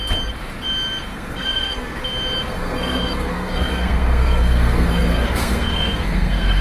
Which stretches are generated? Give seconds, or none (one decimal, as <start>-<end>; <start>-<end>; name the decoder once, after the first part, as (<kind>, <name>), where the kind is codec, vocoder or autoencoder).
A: 1.1-2.0 (codec, SNAC); 2.5-6.6